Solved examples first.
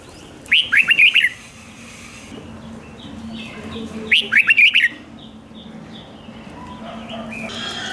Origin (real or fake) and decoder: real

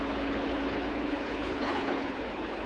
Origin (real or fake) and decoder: fake, codec, HILCodec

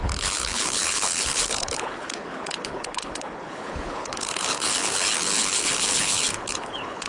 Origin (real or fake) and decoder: fake, codec, HILCodec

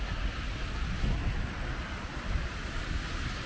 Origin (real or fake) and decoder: real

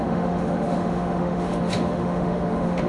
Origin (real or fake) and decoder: fake, autoencoder, DAC-VAE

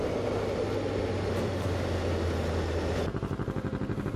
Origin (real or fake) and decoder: real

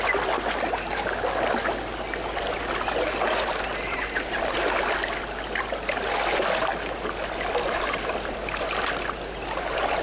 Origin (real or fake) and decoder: real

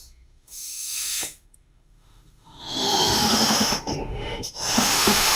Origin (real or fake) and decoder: fake, autoencoder, DAC-VAE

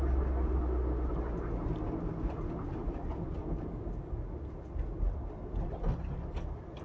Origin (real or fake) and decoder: real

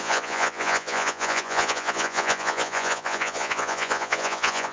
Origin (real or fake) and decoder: fake, vocoder, Vocos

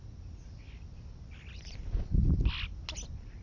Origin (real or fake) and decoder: real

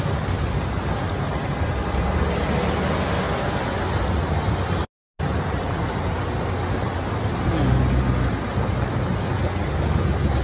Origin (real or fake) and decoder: real